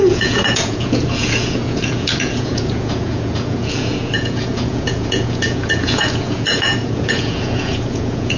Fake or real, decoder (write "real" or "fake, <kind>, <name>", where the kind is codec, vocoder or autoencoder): fake, vocoder, Vocos